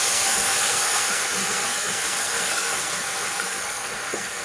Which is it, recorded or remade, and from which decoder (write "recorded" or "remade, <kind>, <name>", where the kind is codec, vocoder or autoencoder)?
remade, codec, SNAC